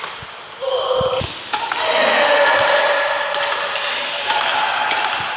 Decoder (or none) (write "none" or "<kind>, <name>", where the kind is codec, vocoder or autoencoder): none